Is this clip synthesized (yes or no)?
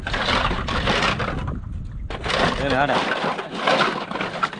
no